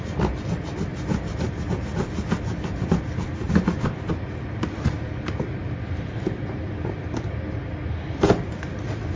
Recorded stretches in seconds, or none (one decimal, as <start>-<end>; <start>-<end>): 0.0-9.2